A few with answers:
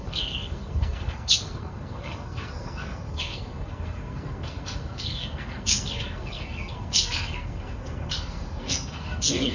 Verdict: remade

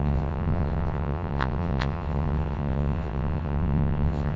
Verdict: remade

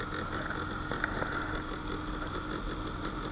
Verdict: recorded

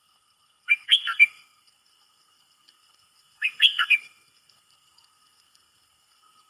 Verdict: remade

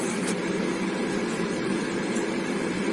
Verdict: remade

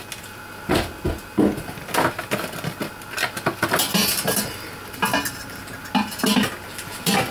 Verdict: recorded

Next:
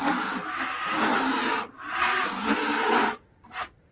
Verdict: recorded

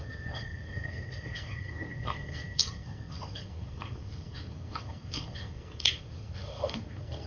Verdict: remade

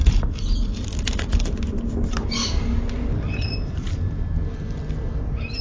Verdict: recorded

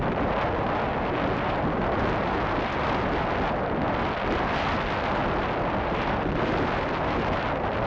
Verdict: recorded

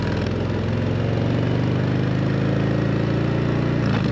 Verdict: recorded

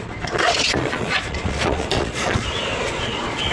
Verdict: remade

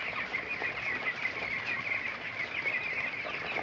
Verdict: recorded